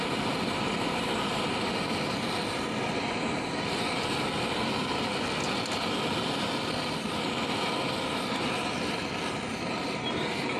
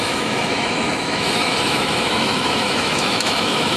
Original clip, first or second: first